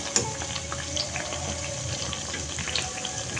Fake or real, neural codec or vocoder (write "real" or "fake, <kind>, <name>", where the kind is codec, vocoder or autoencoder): real